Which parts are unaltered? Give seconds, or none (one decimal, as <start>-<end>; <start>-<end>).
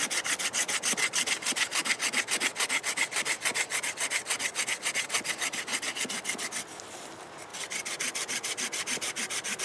0.0-7.5